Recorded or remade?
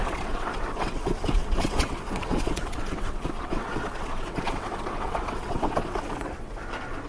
remade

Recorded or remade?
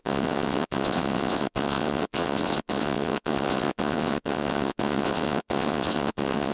remade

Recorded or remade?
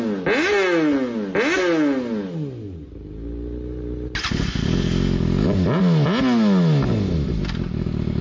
recorded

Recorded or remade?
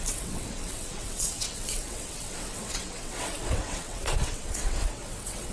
remade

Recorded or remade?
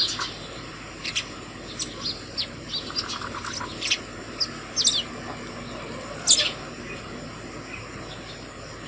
recorded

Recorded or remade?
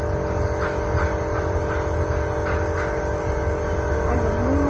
recorded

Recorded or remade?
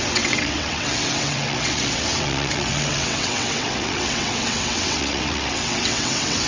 remade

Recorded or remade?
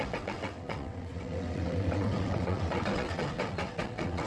remade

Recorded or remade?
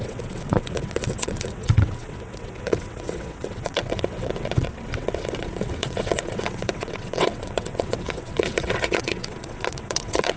remade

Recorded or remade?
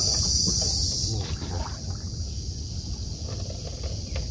recorded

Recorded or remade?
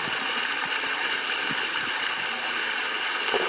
recorded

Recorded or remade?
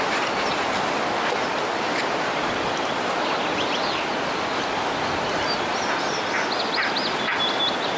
recorded